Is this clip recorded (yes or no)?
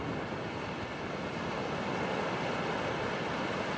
yes